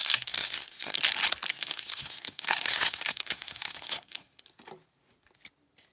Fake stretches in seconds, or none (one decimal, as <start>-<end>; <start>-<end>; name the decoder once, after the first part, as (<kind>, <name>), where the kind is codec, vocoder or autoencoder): 0.0-1.0 (codec, SNAC); 1.5-4.4